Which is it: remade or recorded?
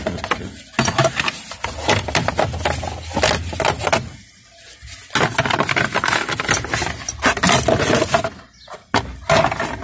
recorded